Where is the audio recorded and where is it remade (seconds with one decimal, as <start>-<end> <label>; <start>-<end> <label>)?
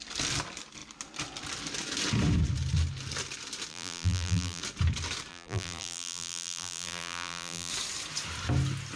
0.0-3.7 recorded; 3.7-4.6 remade; 4.6-5.3 recorded; 5.3-7.7 remade; 7.7-9.0 recorded